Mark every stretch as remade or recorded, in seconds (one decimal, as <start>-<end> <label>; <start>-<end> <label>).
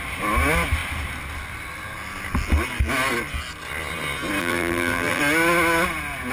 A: 0.0-4.4 recorded; 4.4-5.2 remade; 5.2-6.3 recorded